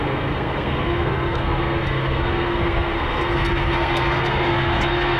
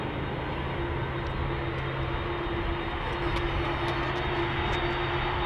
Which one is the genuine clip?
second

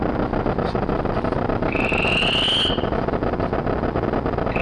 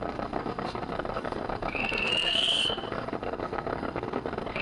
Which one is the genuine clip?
first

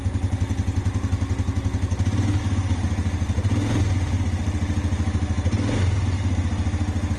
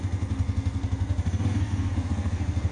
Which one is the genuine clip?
first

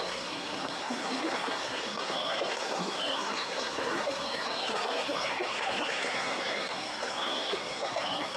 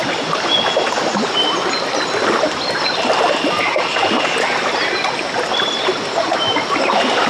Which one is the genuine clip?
second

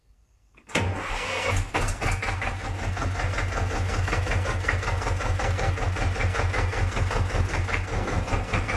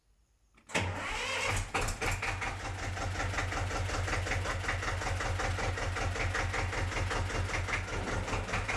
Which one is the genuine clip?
second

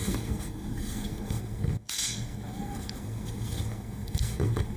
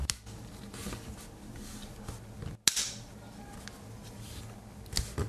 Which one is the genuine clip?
second